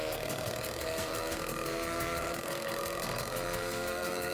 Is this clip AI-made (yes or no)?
yes